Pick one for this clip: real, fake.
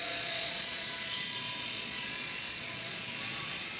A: fake